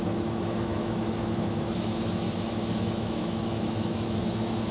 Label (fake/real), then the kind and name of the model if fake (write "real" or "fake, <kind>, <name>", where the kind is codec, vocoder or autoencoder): fake, autoencoder, DAC-VAE